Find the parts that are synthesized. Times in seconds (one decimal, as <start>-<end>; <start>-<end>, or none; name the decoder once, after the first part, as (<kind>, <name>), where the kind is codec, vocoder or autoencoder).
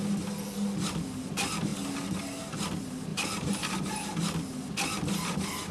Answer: 3.1-4.0 (vocoder, BigVGAN v2)